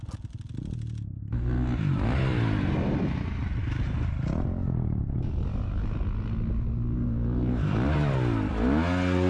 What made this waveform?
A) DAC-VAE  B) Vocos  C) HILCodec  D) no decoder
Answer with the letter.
D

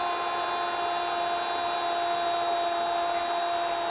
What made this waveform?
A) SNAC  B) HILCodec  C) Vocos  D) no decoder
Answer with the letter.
D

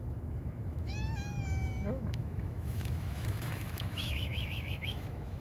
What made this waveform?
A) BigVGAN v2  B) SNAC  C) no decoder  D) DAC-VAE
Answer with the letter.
D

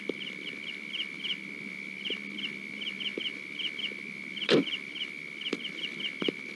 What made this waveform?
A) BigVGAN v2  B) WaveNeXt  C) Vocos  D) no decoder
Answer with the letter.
A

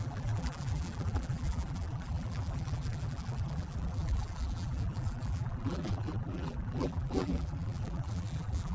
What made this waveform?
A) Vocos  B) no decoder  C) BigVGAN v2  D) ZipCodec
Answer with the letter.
C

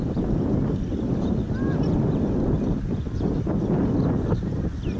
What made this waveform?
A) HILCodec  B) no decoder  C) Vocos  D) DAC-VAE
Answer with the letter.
B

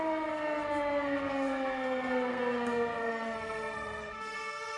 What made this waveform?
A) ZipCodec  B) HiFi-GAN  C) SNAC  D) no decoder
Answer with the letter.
C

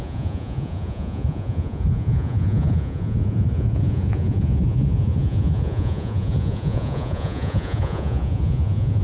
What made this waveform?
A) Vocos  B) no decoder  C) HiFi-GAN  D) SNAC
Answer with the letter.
A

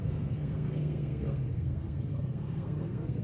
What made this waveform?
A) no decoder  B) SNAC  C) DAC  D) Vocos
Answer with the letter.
B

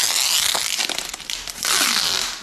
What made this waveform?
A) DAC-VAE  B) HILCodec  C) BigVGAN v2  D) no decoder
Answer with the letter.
D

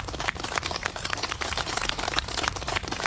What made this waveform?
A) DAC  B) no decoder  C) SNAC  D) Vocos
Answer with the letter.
A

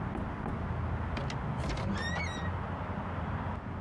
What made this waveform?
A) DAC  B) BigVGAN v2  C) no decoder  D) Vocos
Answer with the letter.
C